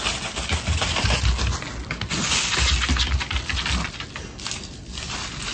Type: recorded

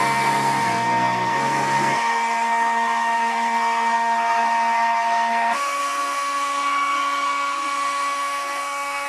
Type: remade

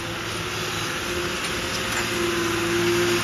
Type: recorded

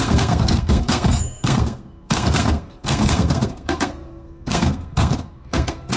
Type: remade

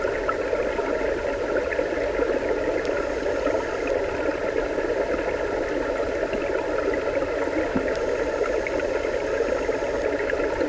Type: recorded